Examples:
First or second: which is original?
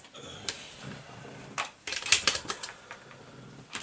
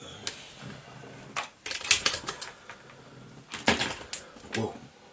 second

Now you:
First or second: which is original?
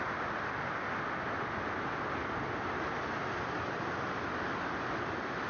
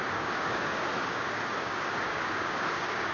first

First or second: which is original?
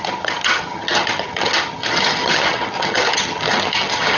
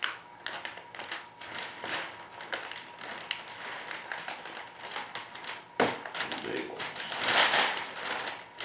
second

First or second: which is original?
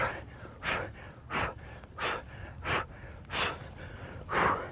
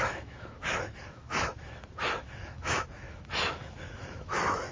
first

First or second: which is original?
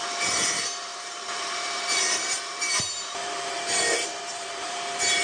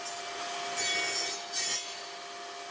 second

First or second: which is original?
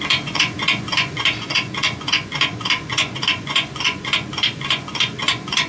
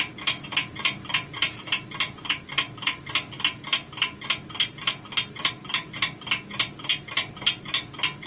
second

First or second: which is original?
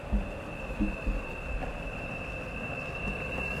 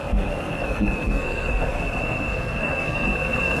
first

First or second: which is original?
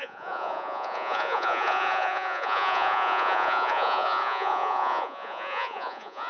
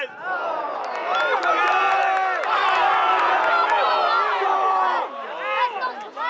second